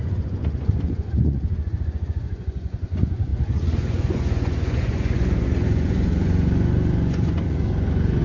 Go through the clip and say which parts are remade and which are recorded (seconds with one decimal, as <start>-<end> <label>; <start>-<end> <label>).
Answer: 0.0-8.2 remade